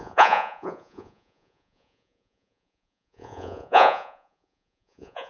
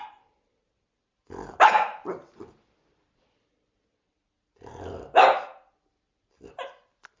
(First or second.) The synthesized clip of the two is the first